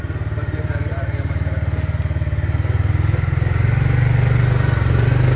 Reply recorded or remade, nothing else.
recorded